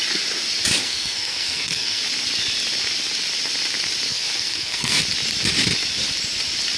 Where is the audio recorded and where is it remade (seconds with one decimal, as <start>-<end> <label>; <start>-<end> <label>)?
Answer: 0.0-0.8 recorded; 0.8-2.0 remade; 2.0-4.1 recorded; 4.1-5.0 remade; 5.0-6.8 recorded